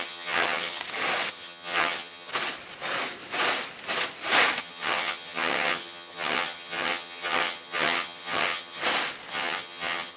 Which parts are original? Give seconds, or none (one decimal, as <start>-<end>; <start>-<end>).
0.8-1.3; 2.3-4.6; 8.8-9.3